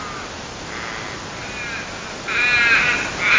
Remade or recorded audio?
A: recorded